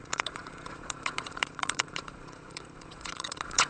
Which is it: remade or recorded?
remade